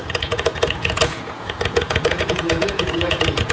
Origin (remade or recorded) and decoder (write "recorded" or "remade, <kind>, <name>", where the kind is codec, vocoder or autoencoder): remade, vocoder, Vocos